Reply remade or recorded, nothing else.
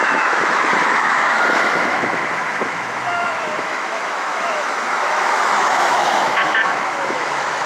remade